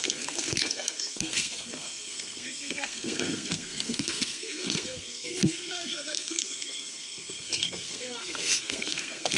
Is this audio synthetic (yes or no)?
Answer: yes